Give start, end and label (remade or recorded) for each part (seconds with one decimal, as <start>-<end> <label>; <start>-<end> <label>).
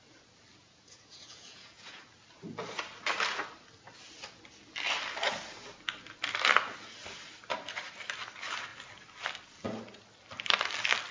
0.0-0.6 recorded; 0.6-2.0 remade; 2.0-11.1 recorded